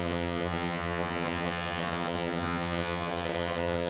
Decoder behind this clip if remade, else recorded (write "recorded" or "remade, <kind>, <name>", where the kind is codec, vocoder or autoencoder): remade, vocoder, HiFi-GAN